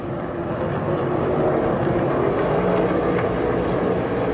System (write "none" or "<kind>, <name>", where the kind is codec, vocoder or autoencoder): none